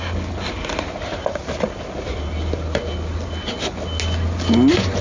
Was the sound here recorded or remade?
recorded